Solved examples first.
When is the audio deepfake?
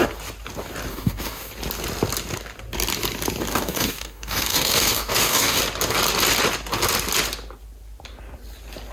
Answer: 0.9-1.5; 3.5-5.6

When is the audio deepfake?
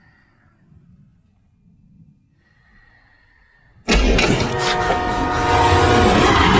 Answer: none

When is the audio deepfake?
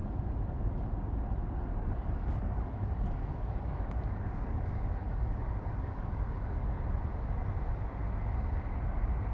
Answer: 1.7-6.8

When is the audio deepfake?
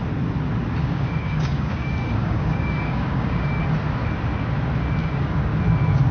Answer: 0.8-3.6; 5.0-5.6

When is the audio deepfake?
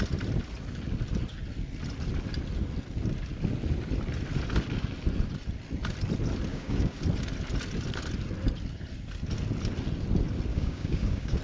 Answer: 6.5-7.0; 10.5-11.4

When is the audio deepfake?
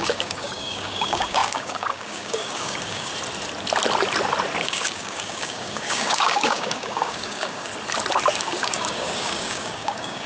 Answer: 0.0-3.1; 4.6-7.7; 8.3-10.3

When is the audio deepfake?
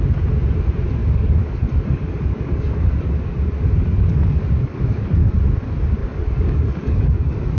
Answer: 1.0-3.0; 3.9-5.4; 6.0-7.6